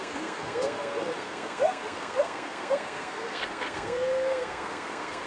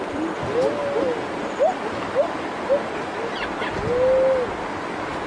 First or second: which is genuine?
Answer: second